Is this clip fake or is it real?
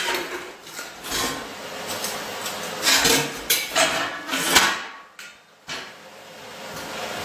real